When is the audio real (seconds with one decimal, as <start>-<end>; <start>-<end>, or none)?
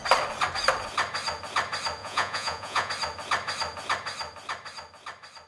0.0-2.0; 2.9-5.5